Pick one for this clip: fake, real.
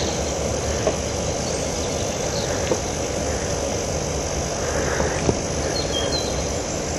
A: real